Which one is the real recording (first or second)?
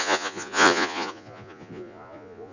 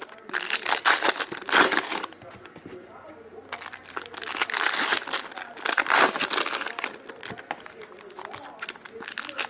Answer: second